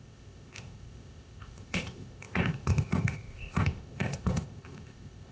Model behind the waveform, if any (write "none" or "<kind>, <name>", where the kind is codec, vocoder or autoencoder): codec, ZipCodec